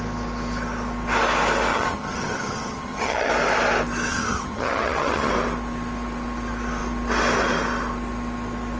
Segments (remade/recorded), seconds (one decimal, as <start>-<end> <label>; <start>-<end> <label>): 0.0-1.7 recorded; 1.7-3.3 remade; 3.3-4.1 recorded; 4.1-5.3 remade; 5.3-8.8 recorded